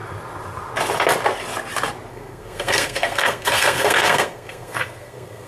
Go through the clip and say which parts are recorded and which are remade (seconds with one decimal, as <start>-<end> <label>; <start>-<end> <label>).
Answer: 0.0-2.1 recorded; 2.1-5.5 remade